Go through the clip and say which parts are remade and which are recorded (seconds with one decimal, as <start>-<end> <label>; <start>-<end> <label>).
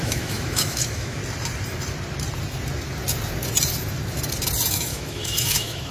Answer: 0.0-1.2 remade; 1.2-4.7 recorded; 4.7-5.9 remade